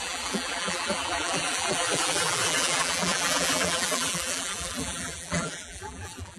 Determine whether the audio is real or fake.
fake